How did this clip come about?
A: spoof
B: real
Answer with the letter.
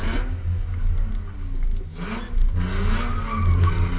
B